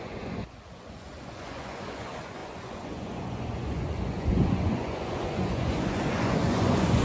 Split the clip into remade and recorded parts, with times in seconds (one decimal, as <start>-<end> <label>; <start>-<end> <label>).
0.0-7.0 remade